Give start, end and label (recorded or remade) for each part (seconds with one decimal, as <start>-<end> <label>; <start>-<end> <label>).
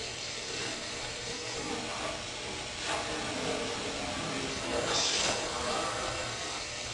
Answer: 0.0-1.7 remade; 1.7-4.5 recorded; 4.5-6.9 remade